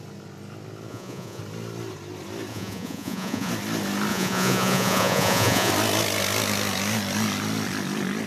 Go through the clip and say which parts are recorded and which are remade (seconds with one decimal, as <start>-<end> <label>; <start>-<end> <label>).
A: 0.0-0.9 recorded; 0.9-1.4 remade; 1.4-2.5 recorded; 2.5-3.5 remade; 3.5-4.1 recorded; 4.1-5.7 remade; 5.7-8.3 recorded